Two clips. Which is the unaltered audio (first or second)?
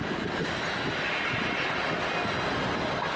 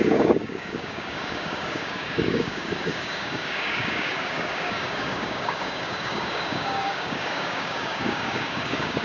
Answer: first